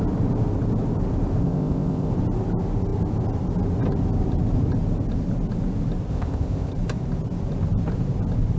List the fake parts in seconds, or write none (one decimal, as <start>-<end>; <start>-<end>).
1.4-2.1; 6.1-6.7